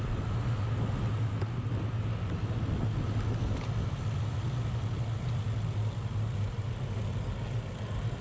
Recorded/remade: recorded